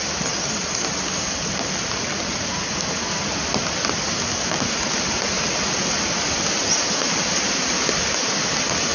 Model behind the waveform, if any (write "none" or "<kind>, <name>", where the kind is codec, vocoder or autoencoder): none